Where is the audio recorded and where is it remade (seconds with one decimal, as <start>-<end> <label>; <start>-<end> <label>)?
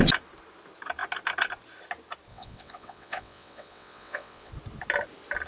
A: 0.0-2.3 recorded; 2.3-4.5 remade; 4.5-5.5 recorded